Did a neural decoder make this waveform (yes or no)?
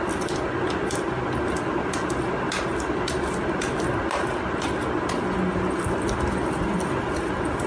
no